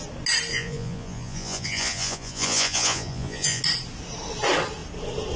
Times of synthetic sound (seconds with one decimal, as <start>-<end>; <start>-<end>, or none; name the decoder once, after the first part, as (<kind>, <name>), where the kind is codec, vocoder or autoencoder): 0.5-3.6 (vocoder, Vocos)